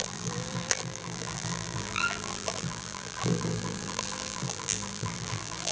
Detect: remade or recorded remade